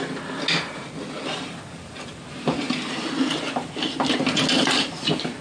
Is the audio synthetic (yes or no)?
no